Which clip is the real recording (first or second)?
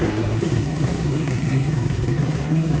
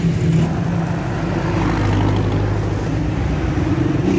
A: second